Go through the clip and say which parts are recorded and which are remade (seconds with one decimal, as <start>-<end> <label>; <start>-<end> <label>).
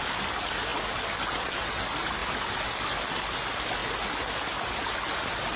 0.0-5.6 recorded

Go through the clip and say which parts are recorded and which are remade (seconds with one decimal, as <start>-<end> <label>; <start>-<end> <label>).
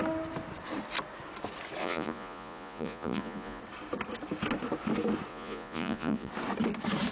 0.0-1.8 recorded; 1.8-3.6 remade; 3.6-5.3 recorded; 5.3-6.3 remade; 6.3-7.1 recorded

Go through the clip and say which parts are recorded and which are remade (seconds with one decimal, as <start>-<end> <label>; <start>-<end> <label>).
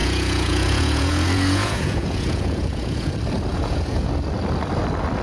0.0-3.1 remade; 3.1-3.5 recorded; 3.5-4.1 remade; 4.1-5.2 recorded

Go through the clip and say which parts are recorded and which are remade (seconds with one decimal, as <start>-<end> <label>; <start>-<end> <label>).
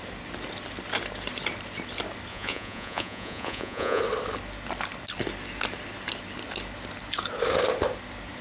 0.0-2.3 recorded; 2.3-4.0 remade; 4.0-8.4 recorded